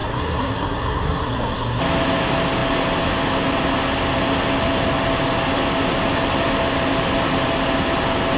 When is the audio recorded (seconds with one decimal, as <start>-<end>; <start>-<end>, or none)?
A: 1.8-8.4